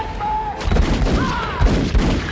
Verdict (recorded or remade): recorded